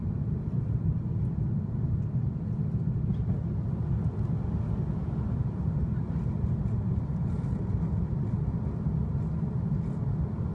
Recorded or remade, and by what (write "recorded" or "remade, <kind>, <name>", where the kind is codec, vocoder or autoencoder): recorded